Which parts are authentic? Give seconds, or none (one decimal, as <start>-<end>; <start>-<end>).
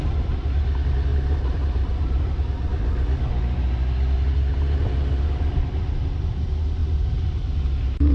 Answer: 0.0-1.1; 2.2-4.5; 5.4-8.1